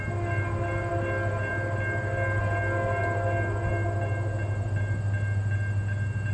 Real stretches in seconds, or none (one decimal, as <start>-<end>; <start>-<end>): 0.0-6.3